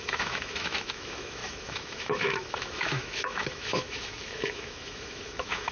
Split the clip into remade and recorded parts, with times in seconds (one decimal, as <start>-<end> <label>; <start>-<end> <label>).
0.0-5.7 remade